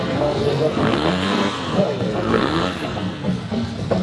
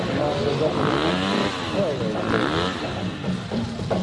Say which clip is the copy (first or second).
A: first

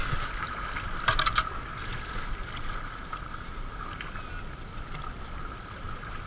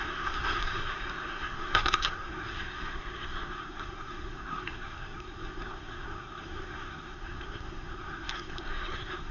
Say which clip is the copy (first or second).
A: second